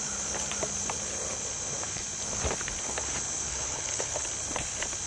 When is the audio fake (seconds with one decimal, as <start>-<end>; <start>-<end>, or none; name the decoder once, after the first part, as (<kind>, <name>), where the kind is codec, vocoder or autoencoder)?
3.5-4.3 (codec, HILCodec)